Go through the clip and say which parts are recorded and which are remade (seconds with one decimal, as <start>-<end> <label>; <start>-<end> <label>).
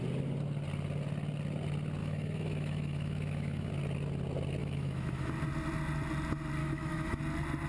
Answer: 0.0-2.0 recorded; 2.0-3.7 remade; 3.7-4.6 recorded; 4.6-5.3 remade; 5.3-6.6 recorded; 6.6-7.2 remade; 7.2-7.7 recorded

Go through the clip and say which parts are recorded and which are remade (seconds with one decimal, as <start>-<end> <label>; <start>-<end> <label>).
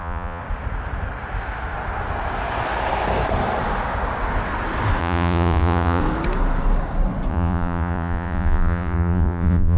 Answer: 0.0-0.4 remade; 0.4-5.0 recorded; 5.0-6.0 remade; 6.0-7.3 recorded; 7.3-9.8 remade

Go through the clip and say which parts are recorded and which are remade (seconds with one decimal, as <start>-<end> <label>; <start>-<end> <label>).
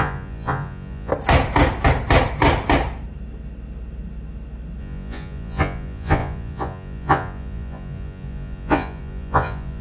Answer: 0.0-1.1 remade; 1.1-4.8 recorded; 4.8-9.8 remade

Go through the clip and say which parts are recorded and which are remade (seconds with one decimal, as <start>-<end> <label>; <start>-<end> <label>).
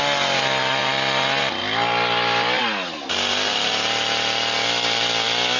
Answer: 0.0-5.6 recorded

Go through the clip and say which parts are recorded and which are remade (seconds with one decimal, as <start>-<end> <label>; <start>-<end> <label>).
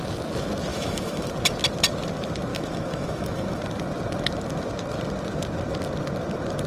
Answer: 0.0-0.7 recorded; 0.7-1.3 remade; 1.3-2.5 recorded; 2.5-3.6 remade; 3.6-6.7 recorded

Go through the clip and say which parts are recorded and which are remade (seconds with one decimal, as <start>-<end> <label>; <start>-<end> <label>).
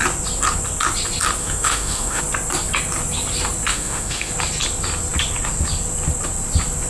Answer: 0.0-1.4 recorded; 1.4-2.2 remade; 2.2-3.7 recorded; 3.7-4.3 remade; 4.3-6.9 recorded